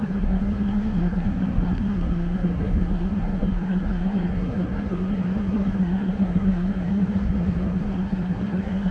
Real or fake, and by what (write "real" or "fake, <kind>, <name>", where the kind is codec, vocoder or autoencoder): fake, codec, SNAC